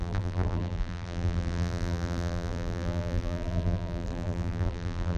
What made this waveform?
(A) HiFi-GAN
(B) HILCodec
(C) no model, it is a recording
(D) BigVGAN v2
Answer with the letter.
D